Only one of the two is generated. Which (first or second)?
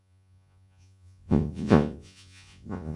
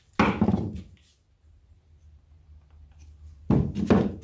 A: first